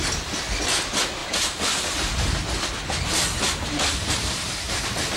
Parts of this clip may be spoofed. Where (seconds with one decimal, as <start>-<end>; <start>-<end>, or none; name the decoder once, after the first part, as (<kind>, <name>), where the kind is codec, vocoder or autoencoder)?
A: 1.2-1.8 (vocoder, BigVGAN v2); 3.9-4.8